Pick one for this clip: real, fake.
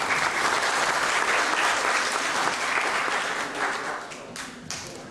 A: real